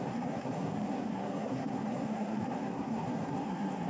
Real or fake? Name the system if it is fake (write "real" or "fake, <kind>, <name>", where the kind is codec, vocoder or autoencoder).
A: fake, codec, SNAC